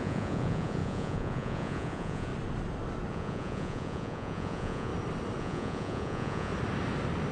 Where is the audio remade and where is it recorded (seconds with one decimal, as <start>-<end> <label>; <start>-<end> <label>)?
0.0-2.3 remade; 2.3-3.1 recorded; 3.1-4.9 remade; 4.9-5.4 recorded; 5.4-6.5 remade; 6.5-7.3 recorded